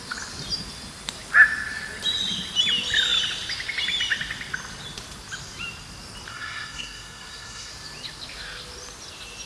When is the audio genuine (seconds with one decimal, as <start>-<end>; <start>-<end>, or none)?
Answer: 0.0-6.3; 7.7-9.5

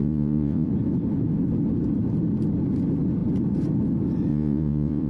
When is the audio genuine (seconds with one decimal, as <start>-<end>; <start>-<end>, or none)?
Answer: 0.7-4.3

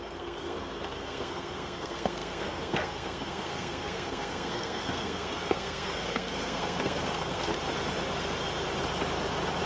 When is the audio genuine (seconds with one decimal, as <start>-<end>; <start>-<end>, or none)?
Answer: 7.5-9.7